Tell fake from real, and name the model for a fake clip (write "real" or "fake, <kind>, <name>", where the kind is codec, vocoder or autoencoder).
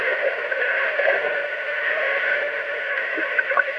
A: fake, autoencoder, DAC-VAE